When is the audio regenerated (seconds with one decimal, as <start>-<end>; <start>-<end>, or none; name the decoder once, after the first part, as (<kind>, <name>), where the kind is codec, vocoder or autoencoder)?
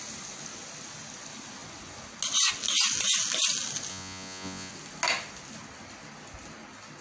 3.9-4.7 (vocoder, Vocos)